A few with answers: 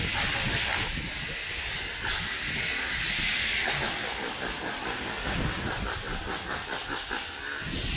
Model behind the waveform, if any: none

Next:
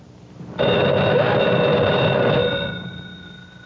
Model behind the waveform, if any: none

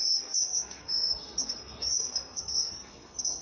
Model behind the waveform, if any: codec, SNAC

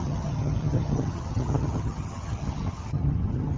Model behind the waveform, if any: vocoder, HiFi-GAN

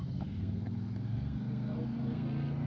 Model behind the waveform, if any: codec, SNAC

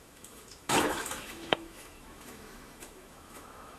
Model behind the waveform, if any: autoencoder, DAC-VAE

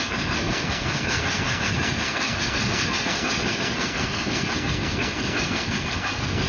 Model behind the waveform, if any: codec, SNAC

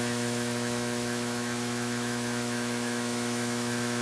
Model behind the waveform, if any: autoencoder, DAC-VAE